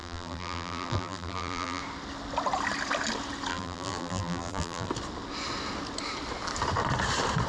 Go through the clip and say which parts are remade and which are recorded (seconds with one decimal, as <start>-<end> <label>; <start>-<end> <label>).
0.0-1.8 remade; 1.8-3.5 recorded; 3.5-4.9 remade; 4.9-7.5 recorded